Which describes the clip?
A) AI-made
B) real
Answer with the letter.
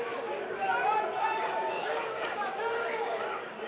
A